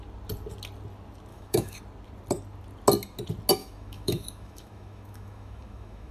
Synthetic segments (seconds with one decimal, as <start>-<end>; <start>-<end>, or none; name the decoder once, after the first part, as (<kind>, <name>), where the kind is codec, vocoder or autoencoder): 1.3-1.8 (autoencoder, DAC-VAE); 3.6-6.1